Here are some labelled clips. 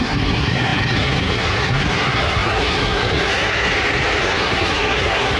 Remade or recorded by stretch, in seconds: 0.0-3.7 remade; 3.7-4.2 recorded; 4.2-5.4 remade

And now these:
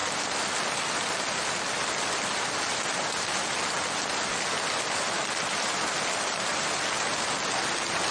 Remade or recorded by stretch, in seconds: 0.0-8.1 recorded

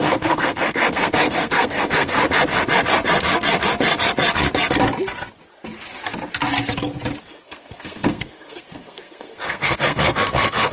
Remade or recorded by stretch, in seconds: 0.0-2.2 remade; 2.2-7.2 recorded; 7.2-10.7 remade

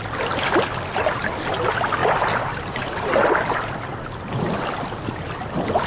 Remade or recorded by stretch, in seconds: 0.0-5.9 recorded

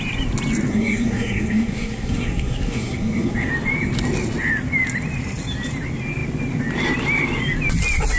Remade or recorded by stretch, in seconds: 0.0-0.7 recorded; 0.7-3.5 remade; 3.5-8.2 recorded

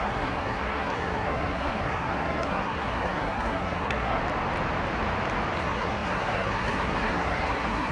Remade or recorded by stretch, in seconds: 0.0-4.2 remade; 4.2-5.6 recorded; 5.6-7.9 remade